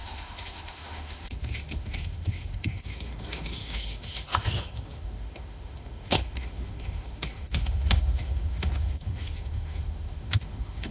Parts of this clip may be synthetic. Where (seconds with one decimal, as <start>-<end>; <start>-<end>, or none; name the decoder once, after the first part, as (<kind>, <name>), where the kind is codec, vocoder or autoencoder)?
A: 0.0-10.9 (autoencoder, DAC-VAE)